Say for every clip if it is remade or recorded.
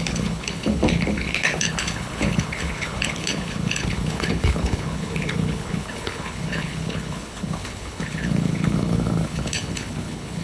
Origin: remade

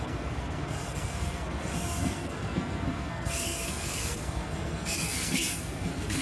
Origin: remade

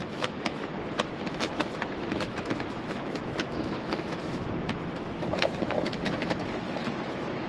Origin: remade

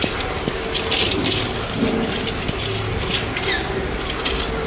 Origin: recorded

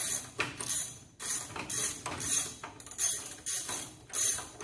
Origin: recorded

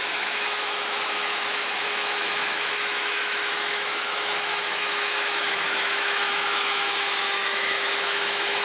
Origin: remade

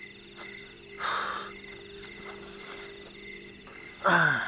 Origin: recorded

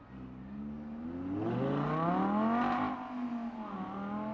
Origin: recorded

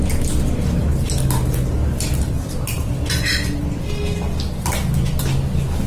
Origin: recorded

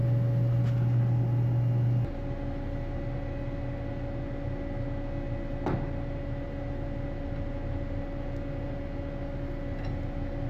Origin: recorded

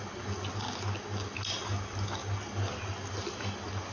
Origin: recorded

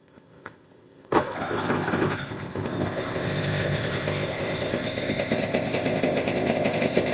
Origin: remade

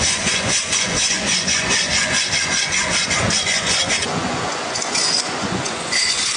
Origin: remade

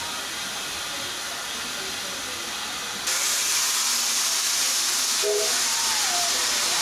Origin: recorded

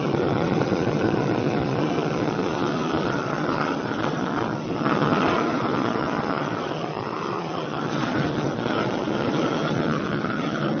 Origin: remade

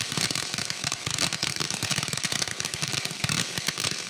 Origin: remade